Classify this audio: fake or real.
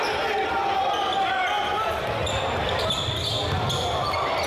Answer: real